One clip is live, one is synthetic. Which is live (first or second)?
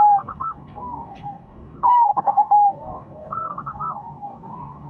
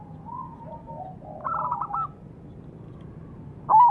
second